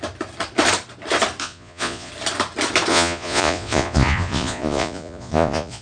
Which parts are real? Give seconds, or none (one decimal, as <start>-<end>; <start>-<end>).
0.0-1.4; 2.1-2.9